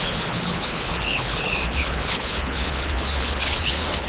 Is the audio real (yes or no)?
no